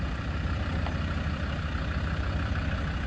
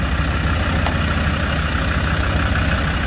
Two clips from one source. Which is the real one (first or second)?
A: second